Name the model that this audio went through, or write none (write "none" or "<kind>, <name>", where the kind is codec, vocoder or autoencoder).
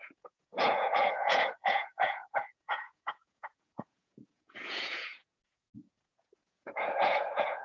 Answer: vocoder, Vocos